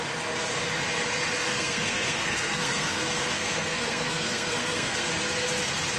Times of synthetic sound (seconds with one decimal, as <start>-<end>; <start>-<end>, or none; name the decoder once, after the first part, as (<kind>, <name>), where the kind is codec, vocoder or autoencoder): 1.5-5.1 (codec, SNAC)